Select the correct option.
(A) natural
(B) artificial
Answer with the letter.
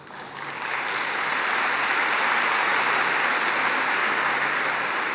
A